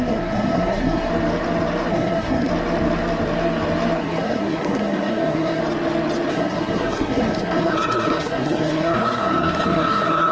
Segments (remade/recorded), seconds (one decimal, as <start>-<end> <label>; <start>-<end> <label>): 0.0-1.1 remade; 1.1-1.9 recorded; 1.9-2.5 remade; 2.5-4.0 recorded; 4.0-5.6 remade; 5.6-6.3 recorded; 6.3-10.3 remade